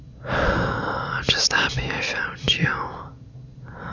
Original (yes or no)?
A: yes